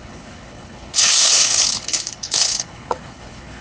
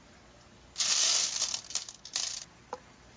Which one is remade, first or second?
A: first